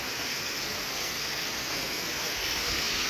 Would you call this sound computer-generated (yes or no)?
yes